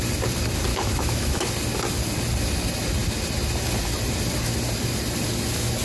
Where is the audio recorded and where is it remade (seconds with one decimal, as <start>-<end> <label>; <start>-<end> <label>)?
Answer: 0.0-0.7 recorded; 0.7-1.5 remade; 1.5-5.8 recorded